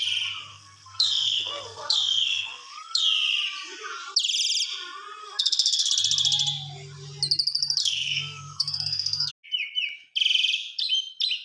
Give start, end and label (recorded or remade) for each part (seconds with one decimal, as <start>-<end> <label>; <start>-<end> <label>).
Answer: 0.0-0.5 recorded; 0.5-3.0 remade; 3.0-5.2 recorded; 5.2-5.9 remade; 5.9-7.8 recorded; 7.8-9.3 remade; 9.3-11.4 recorded